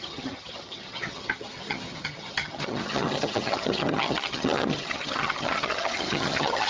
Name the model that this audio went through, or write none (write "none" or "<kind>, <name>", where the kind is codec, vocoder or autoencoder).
vocoder, HiFi-GAN